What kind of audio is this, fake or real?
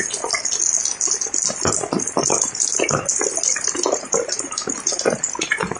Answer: real